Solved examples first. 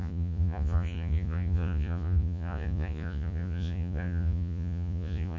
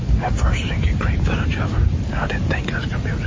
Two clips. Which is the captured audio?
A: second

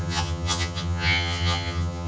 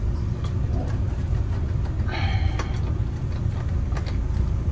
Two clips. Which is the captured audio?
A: second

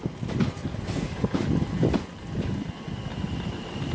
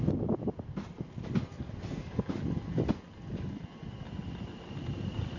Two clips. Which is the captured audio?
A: second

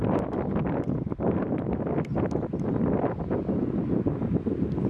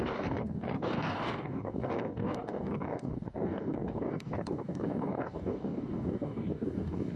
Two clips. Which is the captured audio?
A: first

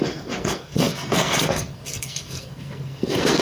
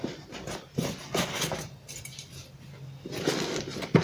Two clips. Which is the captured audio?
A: second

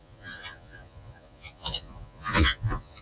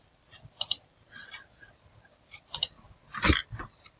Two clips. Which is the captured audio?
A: second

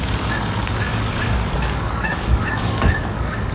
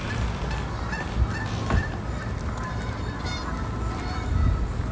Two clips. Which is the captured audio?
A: second